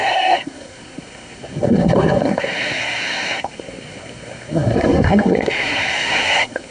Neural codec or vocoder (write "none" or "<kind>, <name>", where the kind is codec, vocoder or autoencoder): codec, SNAC